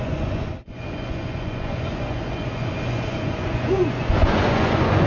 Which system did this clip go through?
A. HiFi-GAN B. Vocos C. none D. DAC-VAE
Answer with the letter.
B